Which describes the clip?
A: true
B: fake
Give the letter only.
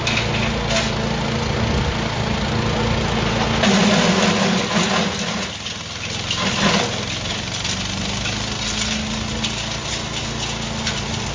A